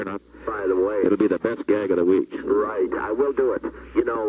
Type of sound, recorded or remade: recorded